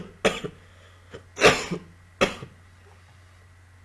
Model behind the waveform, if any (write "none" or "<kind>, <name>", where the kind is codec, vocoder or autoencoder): none